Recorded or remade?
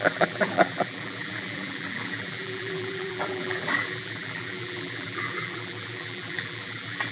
remade